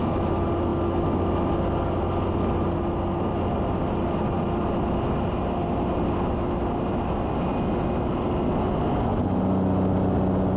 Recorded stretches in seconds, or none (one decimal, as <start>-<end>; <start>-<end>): 0.0-10.6